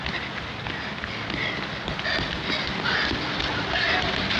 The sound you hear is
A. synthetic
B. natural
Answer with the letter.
B